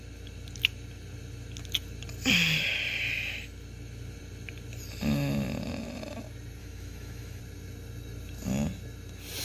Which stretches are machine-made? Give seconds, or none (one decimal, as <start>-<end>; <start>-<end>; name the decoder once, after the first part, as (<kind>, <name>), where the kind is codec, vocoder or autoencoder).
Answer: 6.6-7.4 (autoencoder, DAC-VAE)